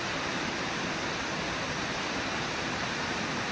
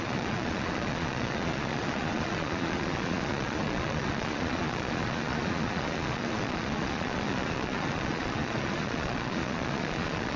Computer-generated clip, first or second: second